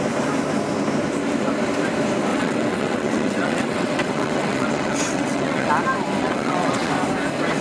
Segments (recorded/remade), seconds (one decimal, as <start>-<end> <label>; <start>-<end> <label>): 0.0-2.3 recorded; 2.3-5.7 remade; 5.7-6.2 recorded; 6.2-6.9 remade; 6.9-7.6 recorded